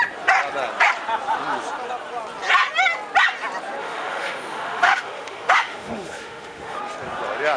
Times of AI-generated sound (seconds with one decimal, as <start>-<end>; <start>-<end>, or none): 3.8-6.8